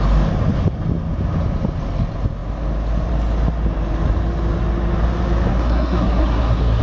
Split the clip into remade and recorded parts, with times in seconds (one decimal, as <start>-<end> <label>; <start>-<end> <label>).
0.0-5.5 recorded; 5.5-6.8 remade